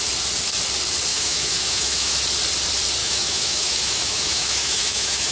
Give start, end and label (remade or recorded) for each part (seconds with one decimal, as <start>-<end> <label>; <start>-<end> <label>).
0.0-1.1 recorded; 1.1-2.2 remade; 2.2-3.0 recorded; 3.0-5.3 remade